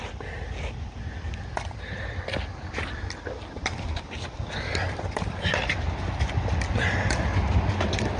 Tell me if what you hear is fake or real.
real